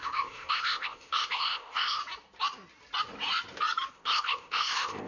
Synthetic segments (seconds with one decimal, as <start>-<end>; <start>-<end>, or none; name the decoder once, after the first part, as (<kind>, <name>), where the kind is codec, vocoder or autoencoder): 0.0-2.0 (codec, ZipCodec); 3.9-5.1

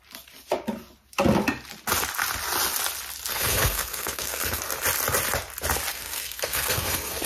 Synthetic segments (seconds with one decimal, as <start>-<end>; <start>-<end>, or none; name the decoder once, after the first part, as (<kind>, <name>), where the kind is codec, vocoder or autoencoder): 3.3-4.6 (codec, SNAC); 5.9-7.3

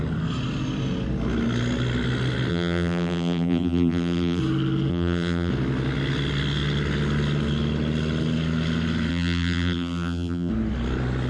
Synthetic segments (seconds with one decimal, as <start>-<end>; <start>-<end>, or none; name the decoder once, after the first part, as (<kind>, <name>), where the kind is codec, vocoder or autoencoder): 2.5-4.4 (vocoder, BigVGAN v2); 4.9-5.5; 9.1-10.5